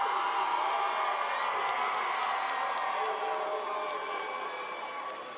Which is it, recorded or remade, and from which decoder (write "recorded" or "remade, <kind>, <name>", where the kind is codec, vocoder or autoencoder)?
recorded